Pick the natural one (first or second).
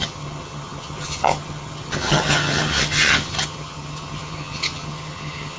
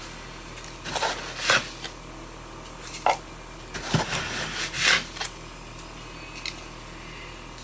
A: second